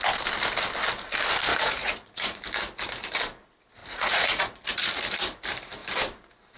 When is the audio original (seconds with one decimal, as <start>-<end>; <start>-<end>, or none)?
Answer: 0.0-1.5; 2.4-3.8; 5.0-6.6